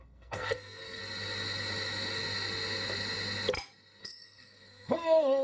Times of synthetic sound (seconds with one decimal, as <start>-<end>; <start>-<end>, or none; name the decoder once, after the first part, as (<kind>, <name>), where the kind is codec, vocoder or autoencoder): 0.0-1.0 (codec, SNAC); 4.0-5.4